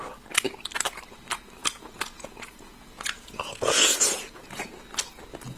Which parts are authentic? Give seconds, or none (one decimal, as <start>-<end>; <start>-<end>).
0.0-1.6; 4.7-5.6